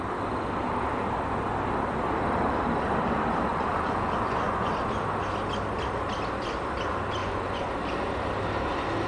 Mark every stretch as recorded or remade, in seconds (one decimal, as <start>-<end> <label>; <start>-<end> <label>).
0.0-3.5 recorded; 3.5-4.7 remade; 4.7-7.2 recorded; 7.2-7.7 remade; 7.7-9.1 recorded